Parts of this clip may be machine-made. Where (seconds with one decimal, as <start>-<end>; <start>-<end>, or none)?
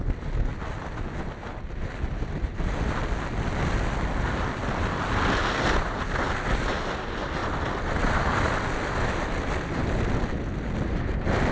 none